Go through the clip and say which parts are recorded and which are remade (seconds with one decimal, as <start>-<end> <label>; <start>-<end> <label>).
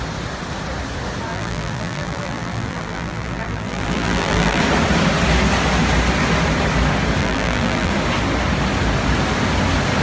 0.0-1.3 recorded; 1.3-4.6 remade; 4.6-7.2 recorded; 7.2-7.9 remade; 7.9-10.0 recorded